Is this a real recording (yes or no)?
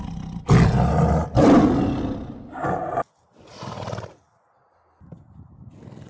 yes